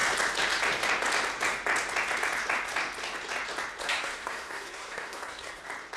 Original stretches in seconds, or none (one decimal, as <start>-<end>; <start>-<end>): 0.0-3.8; 5.6-6.0